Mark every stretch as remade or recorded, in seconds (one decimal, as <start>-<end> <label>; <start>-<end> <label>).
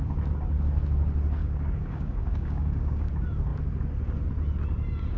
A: 0.0-1.4 recorded; 1.4-3.1 remade; 3.1-5.2 recorded